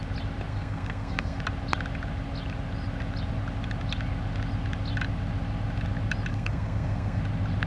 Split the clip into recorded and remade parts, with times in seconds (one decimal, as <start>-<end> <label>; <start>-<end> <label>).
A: 0.0-0.5 recorded; 0.5-1.4 remade; 1.4-6.3 recorded; 6.3-7.2 remade; 7.2-7.7 recorded